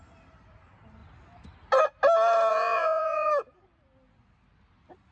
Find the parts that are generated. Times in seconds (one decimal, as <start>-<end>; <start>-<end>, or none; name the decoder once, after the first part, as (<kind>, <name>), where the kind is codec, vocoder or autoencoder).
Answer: 2.5-3.3 (vocoder, Vocos)